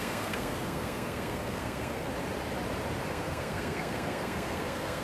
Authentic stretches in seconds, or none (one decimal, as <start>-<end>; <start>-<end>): 2.1-3.1